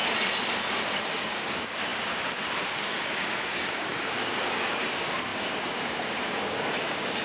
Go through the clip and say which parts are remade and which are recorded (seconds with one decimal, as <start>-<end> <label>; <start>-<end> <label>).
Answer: 0.0-1.1 recorded; 1.1-7.2 remade